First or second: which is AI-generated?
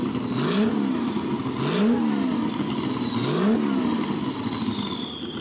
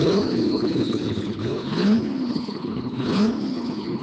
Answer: second